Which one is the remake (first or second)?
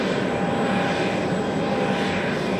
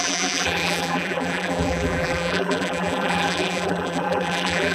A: second